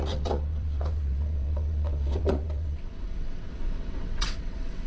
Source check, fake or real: fake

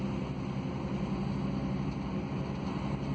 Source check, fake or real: real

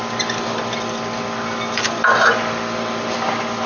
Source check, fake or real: real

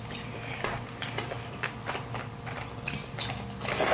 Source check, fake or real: real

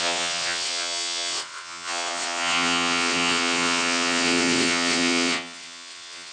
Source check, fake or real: fake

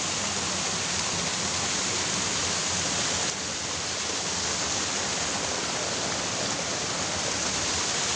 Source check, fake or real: real